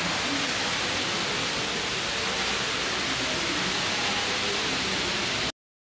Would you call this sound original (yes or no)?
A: yes